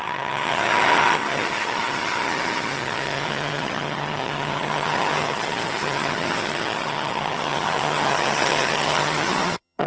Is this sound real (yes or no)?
no